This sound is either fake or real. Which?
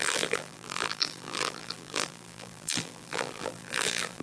fake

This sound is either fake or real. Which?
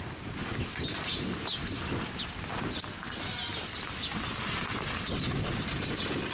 real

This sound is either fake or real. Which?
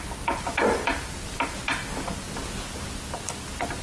real